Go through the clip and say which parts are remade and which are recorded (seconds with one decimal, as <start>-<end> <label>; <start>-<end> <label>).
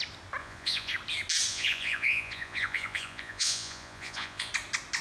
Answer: 0.0-0.4 recorded; 0.4-0.9 remade; 0.9-1.5 recorded; 1.5-4.5 remade; 4.5-5.0 recorded